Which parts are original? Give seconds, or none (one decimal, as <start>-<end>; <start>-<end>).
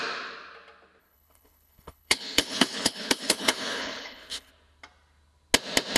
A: 0.0-1.0; 4.5-6.0